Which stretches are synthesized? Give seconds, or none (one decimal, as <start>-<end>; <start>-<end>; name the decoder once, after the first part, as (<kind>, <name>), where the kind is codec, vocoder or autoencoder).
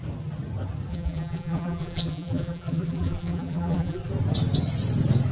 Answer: 0.9-4.1 (vocoder, BigVGAN v2)